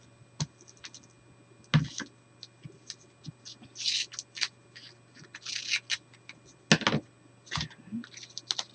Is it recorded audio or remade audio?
recorded